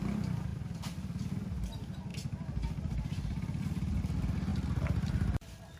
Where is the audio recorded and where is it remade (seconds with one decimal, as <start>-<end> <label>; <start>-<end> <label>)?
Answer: 0.0-0.5 recorded; 0.5-1.3 remade; 1.3-2.1 recorded; 2.1-4.0 remade; 4.0-4.5 recorded; 4.5-5.1 remade; 5.1-5.8 recorded